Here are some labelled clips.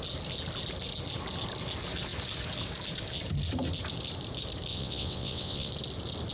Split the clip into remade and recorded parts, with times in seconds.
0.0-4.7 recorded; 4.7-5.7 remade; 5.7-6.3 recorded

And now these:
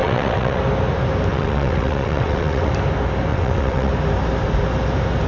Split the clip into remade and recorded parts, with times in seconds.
0.0-0.6 remade; 0.6-1.3 recorded; 1.3-2.7 remade; 2.7-3.3 recorded; 3.3-3.9 remade; 3.9-5.3 recorded

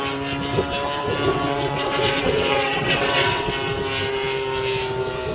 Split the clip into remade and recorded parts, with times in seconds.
0.0-1.3 recorded; 1.3-3.5 remade; 3.5-5.3 recorded